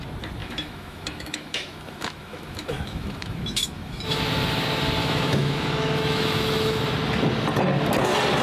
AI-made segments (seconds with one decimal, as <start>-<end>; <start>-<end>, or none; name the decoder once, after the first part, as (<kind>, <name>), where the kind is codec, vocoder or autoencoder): 0.4-4.2 (autoencoder, DAC-VAE); 5.0-6.8

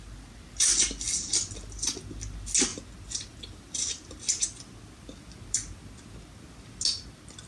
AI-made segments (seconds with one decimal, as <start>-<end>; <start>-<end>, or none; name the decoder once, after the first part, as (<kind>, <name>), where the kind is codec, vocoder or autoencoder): none